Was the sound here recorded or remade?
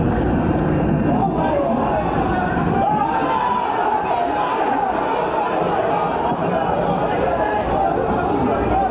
recorded